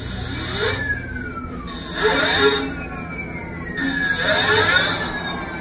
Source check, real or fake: real